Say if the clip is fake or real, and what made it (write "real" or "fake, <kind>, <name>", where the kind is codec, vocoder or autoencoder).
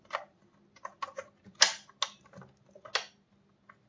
real